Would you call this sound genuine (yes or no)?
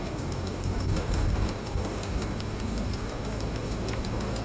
no